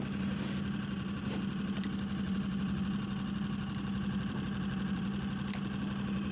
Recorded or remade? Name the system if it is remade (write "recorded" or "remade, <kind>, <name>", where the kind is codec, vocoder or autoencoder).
recorded